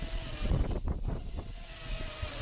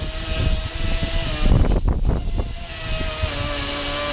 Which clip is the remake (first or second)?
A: first